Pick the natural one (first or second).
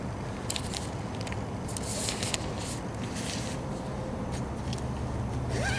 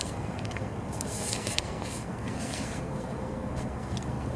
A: first